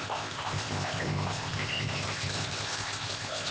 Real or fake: fake